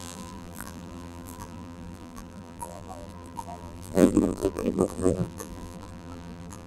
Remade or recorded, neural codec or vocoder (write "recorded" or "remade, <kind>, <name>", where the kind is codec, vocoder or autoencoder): remade, vocoder, BigVGAN v2